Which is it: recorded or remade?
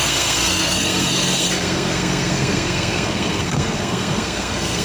remade